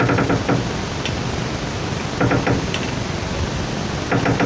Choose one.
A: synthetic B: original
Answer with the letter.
B